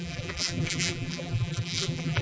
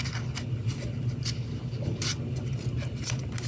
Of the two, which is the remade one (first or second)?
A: first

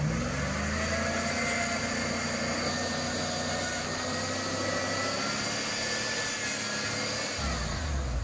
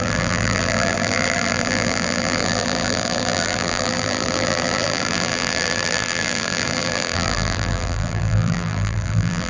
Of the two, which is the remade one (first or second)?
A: second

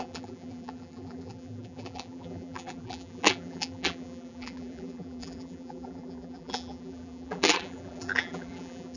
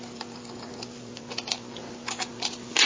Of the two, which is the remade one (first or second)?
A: first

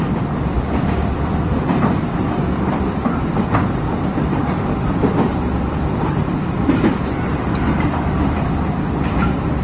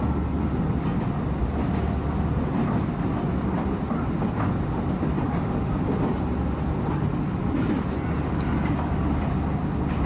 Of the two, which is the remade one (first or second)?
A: first